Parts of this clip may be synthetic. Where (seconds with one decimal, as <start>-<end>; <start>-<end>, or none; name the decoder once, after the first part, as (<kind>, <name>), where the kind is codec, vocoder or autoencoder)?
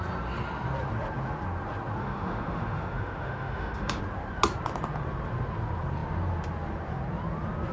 2.0-4.0 (autoencoder, DAC-VAE)